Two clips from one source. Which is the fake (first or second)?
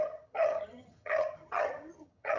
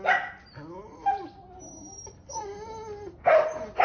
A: first